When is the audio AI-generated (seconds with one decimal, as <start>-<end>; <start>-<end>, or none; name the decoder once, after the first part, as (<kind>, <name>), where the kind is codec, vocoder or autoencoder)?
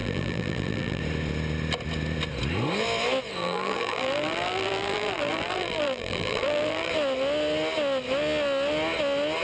0.0-1.0 (vocoder, BigVGAN v2); 3.4-6.9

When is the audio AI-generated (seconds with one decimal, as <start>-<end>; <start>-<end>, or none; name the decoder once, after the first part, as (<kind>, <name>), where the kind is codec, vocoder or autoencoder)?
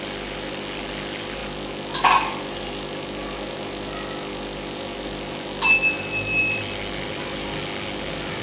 none